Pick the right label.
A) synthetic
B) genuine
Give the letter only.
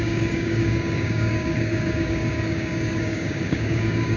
A